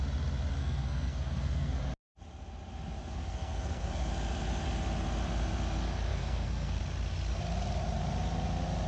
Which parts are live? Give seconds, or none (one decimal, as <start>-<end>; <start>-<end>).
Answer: 0.0-0.6; 1.8-3.0; 4.1-6.1; 6.8-8.9